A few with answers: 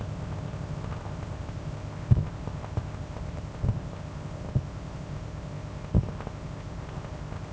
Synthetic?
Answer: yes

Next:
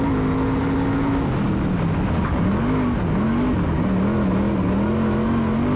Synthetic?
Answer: no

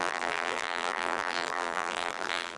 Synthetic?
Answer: yes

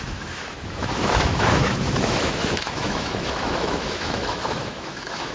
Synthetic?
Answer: yes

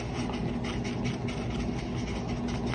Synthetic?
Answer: no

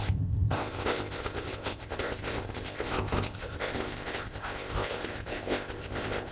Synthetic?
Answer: yes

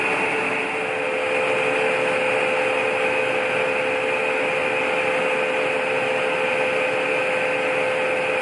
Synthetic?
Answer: no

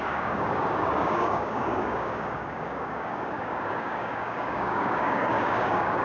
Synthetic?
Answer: yes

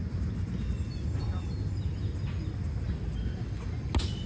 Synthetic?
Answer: no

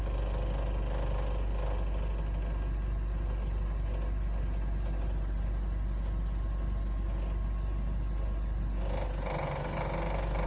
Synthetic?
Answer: no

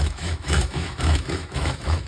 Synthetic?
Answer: yes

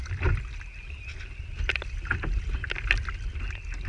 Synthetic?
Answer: yes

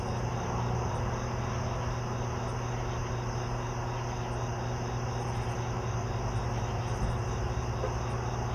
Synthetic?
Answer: no